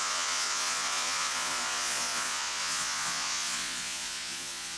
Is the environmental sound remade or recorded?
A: remade